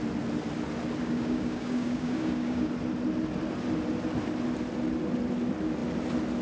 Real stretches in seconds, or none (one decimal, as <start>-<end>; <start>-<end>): 0.0-1.0; 2.7-6.4